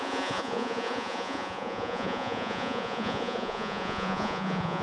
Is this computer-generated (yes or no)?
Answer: yes